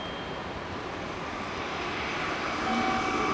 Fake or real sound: real